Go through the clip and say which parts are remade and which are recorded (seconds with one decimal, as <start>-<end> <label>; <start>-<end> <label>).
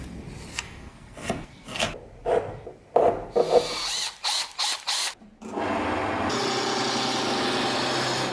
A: 0.0-0.5 recorded; 0.5-1.9 remade; 1.9-8.3 recorded